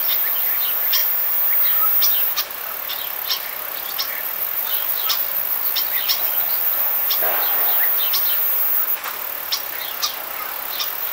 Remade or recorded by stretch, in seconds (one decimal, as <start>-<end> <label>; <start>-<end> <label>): 0.0-11.1 recorded